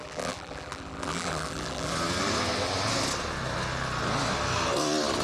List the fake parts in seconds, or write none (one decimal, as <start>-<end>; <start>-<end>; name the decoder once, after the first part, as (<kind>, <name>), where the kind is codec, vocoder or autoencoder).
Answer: 0.0-1.9 (vocoder, BigVGAN v2)